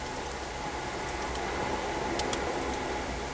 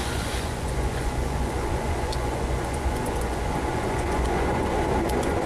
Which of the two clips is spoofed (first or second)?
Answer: second